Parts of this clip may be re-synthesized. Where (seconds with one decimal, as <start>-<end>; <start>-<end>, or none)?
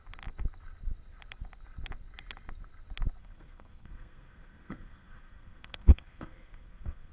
3.2-7.1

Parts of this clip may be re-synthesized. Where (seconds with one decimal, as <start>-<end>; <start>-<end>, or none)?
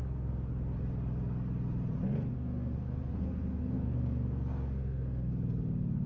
0.0-0.5; 2.3-5.3